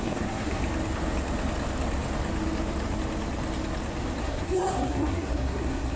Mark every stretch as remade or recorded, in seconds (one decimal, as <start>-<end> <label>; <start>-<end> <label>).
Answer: 0.0-0.6 remade; 0.6-4.2 recorded; 4.2-6.0 remade

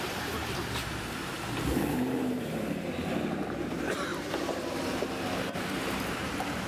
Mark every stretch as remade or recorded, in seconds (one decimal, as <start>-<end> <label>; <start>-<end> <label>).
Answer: 0.0-4.1 remade; 4.1-4.9 recorded; 4.9-6.7 remade